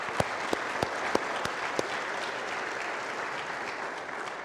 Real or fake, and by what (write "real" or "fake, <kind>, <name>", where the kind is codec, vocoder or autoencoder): real